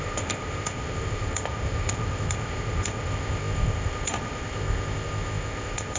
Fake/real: fake